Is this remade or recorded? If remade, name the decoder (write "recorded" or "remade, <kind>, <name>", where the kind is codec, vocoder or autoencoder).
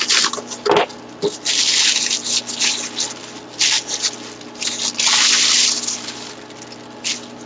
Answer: recorded